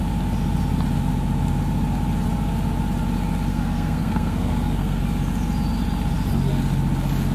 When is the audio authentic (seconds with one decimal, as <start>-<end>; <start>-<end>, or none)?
0.0-3.5; 5.0-7.3